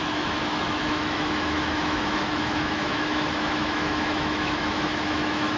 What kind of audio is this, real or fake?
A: fake